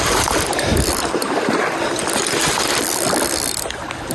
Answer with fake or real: real